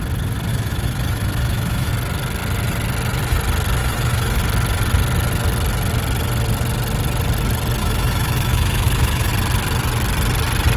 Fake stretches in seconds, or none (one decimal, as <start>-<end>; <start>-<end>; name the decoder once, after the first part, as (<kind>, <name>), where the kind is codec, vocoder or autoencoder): 0.5-1.9 (autoencoder, DAC-VAE); 3.8-4.4; 7.8-9.3